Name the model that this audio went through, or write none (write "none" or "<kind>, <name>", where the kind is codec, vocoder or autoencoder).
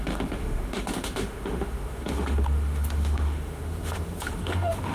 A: autoencoder, DAC-VAE